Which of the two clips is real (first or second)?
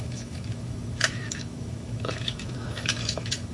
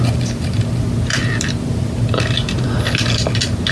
second